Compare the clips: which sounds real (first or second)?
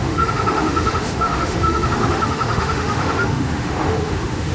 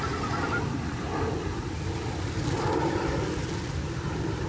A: second